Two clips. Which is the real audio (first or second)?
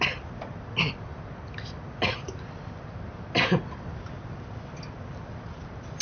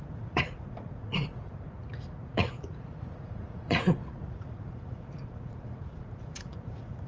first